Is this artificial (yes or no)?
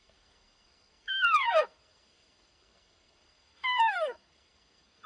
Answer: yes